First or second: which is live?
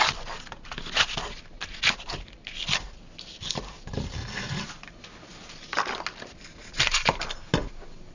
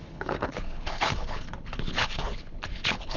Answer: first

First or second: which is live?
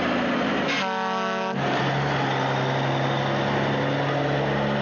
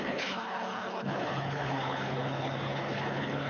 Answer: first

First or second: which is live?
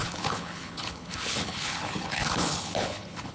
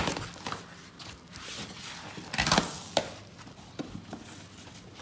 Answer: second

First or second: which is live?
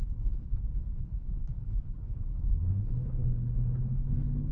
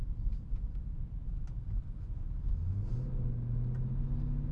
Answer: second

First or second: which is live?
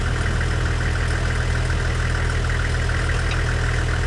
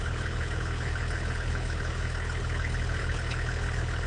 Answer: first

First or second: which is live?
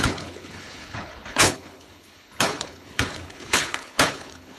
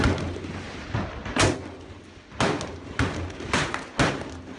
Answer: second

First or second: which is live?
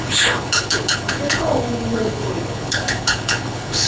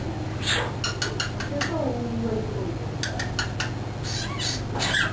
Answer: second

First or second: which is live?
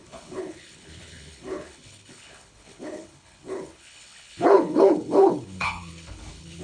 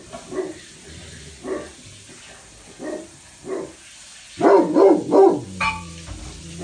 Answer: second